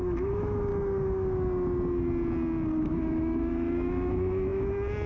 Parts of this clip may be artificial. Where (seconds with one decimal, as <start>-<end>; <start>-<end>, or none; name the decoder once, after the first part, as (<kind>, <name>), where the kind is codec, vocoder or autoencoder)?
0.0-0.7 (autoencoder, DAC-VAE); 2.8-5.1